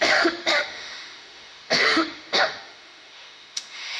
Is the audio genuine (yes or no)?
no